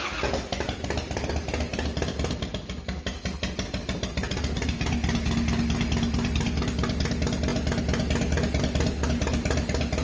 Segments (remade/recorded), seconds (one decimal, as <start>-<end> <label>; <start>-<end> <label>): 0.0-1.7 recorded; 1.7-2.5 remade; 2.5-10.0 recorded

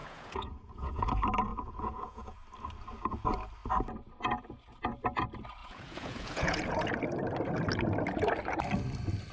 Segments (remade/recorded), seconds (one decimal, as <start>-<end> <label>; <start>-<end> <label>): 0.0-1.1 remade; 1.1-1.5 recorded; 1.5-2.4 remade; 2.4-5.6 recorded; 5.6-7.0 remade; 7.0-9.3 recorded